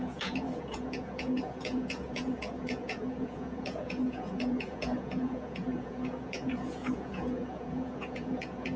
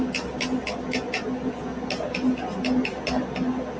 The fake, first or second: first